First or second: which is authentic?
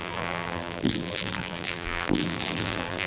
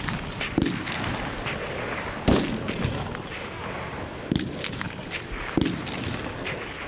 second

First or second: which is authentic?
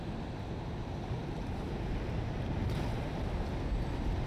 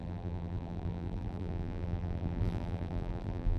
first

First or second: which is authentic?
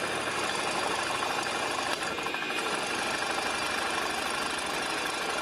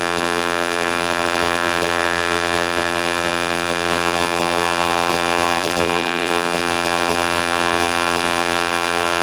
first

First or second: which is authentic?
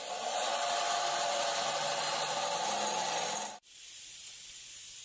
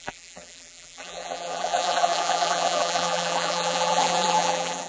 first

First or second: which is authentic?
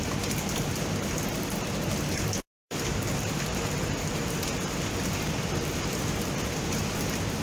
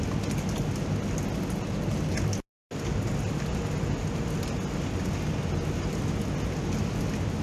second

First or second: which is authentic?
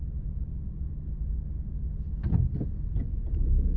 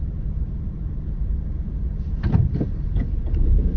first